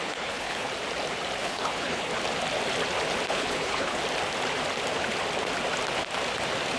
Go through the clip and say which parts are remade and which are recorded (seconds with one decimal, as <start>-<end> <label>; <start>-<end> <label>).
0.0-0.7 remade; 0.7-1.4 recorded; 1.4-2.1 remade; 2.1-3.3 recorded; 3.3-4.0 remade; 4.0-6.8 recorded